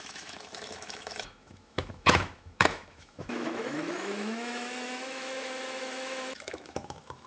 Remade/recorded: remade